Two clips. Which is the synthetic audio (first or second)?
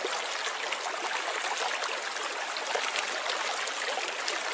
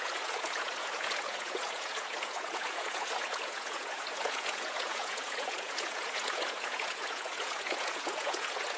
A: second